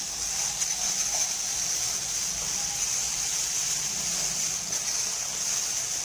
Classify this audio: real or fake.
real